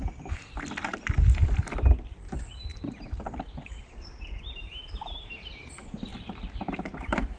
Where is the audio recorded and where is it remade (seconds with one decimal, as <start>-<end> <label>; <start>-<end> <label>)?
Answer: 0.0-2.7 recorded; 2.7-5.5 remade; 5.5-7.4 recorded